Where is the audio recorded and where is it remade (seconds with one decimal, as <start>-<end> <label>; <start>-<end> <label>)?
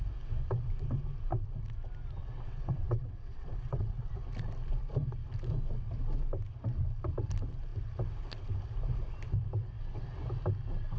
0.0-2.2 recorded; 2.2-4.1 remade; 4.1-11.0 recorded